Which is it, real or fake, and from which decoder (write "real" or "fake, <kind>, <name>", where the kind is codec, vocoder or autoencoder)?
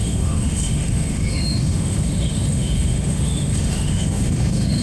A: fake, autoencoder, DAC-VAE